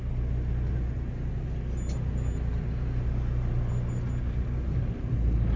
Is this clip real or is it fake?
real